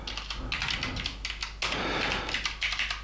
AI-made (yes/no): no